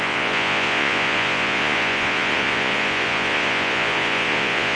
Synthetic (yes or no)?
yes